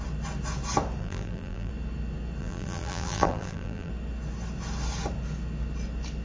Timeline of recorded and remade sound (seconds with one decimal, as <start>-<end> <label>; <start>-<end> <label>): 0.0-1.0 recorded; 1.0-1.7 remade; 1.7-2.4 recorded; 2.4-3.9 remade; 3.9-6.2 recorded